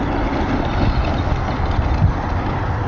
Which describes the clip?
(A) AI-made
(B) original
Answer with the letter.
B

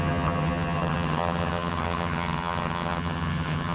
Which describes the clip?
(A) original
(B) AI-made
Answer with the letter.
B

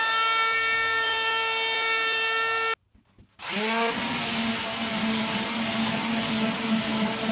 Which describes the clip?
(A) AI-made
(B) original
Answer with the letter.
B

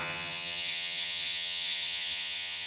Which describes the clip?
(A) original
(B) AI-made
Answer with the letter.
B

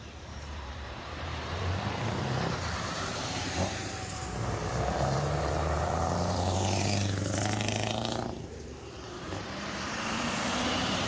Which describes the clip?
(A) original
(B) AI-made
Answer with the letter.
B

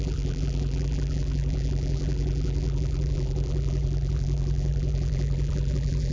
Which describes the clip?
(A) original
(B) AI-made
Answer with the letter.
B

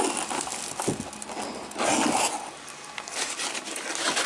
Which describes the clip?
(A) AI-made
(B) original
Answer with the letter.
B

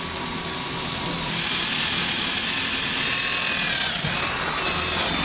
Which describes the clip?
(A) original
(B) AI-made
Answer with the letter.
A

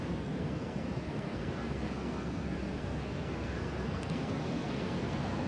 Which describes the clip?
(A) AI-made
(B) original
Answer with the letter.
A